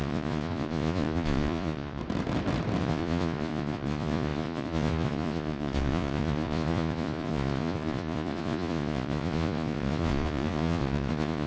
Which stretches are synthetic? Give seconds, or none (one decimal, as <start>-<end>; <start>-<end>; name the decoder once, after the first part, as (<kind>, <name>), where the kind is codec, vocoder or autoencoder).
0.0-2.0 (vocoder, Vocos); 2.8-11.5